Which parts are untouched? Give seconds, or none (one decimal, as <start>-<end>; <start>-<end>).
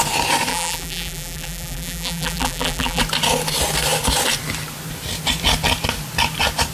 0.0-0.5; 3.0-6.7